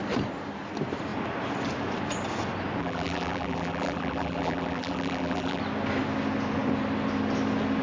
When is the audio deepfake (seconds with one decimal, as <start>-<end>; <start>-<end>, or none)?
2.8-5.6